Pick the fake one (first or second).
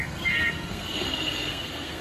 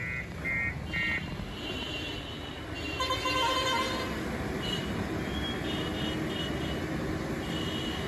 first